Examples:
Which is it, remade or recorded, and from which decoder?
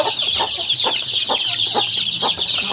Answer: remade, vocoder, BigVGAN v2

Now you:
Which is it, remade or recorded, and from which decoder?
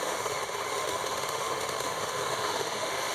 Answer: remade, autoencoder, DAC-VAE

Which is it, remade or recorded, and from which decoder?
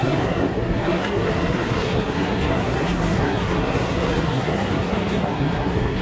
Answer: remade, codec, SNAC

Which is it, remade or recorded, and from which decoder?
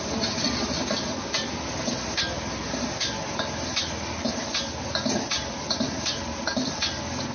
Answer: recorded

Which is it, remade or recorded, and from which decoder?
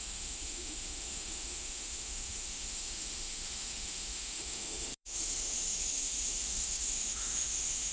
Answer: remade, autoencoder, DAC-VAE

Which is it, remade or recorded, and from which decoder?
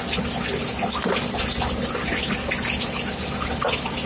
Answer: recorded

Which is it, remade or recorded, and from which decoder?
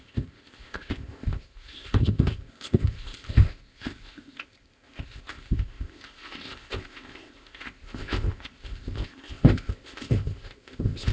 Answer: remade, codec, ZipCodec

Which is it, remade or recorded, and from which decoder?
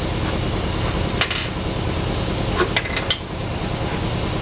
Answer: recorded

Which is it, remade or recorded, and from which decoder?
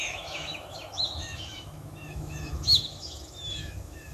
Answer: remade, autoencoder, DAC-VAE